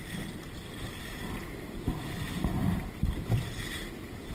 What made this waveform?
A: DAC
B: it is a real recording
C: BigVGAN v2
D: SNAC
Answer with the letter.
B